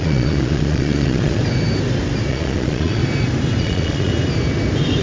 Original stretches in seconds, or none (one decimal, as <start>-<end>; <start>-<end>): 1.4-2.3; 3.0-3.6; 4.1-5.0